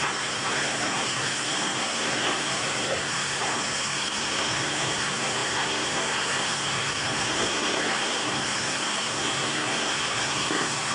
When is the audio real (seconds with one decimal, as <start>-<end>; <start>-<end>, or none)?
none